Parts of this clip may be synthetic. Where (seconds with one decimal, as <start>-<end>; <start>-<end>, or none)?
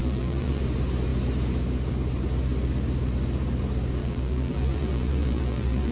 0.0-0.6; 4.0-5.9